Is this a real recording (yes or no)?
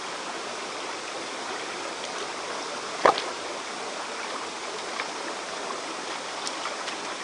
no